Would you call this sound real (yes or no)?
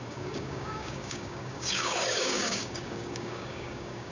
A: no